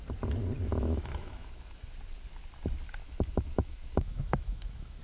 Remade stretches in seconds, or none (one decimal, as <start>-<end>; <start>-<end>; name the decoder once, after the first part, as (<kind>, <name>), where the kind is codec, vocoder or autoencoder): 0.7-1.9 (autoencoder, DAC-VAE); 3.0-5.0